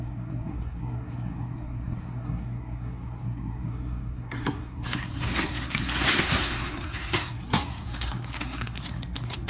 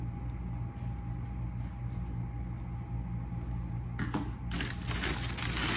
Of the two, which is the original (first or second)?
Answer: second